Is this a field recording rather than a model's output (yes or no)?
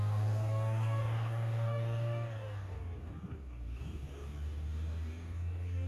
no